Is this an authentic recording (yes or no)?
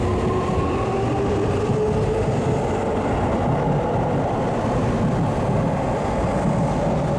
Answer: yes